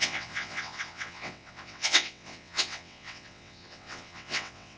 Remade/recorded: remade